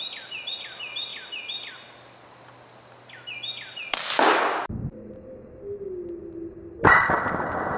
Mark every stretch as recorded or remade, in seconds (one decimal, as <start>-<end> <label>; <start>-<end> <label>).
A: 0.0-7.8 recorded